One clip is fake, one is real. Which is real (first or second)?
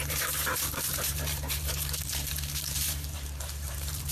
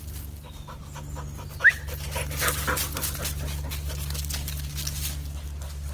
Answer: second